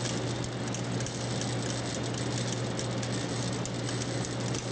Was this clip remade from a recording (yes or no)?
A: no